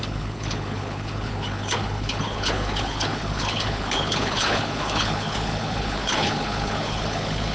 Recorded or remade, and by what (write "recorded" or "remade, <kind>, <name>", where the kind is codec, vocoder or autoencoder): remade, codec, HILCodec